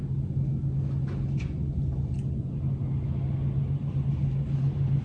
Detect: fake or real real